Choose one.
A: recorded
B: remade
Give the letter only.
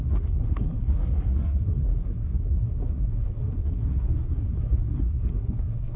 B